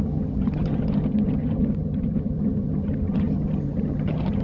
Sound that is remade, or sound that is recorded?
remade